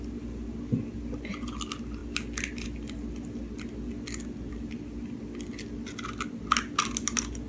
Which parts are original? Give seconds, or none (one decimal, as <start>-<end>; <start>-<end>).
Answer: 0.0-7.5

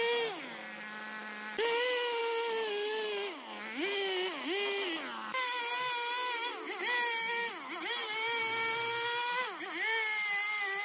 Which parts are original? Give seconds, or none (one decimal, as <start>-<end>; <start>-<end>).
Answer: 0.0-10.8